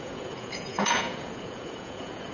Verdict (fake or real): fake